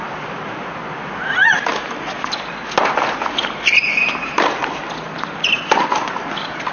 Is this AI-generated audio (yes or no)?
no